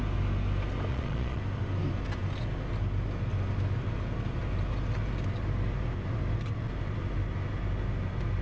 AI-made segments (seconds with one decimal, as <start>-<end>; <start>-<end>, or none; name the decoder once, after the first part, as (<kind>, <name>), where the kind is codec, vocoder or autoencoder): 0.9-1.4 (vocoder, Vocos)